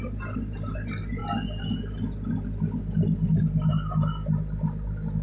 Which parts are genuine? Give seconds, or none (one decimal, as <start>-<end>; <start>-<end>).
0.0-5.2